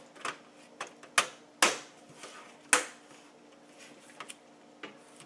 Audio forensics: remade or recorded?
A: recorded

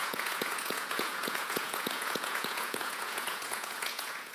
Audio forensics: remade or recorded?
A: remade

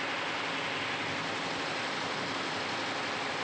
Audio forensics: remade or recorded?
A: recorded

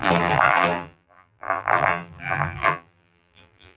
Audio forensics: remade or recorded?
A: remade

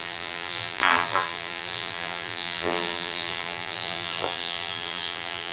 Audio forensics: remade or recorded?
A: remade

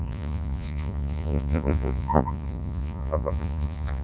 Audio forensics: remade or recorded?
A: remade